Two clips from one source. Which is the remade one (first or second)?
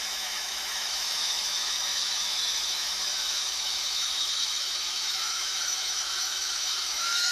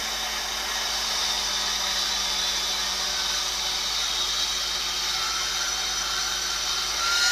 first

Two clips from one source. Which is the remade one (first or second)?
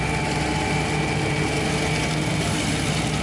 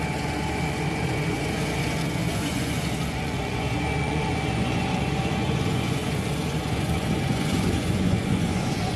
second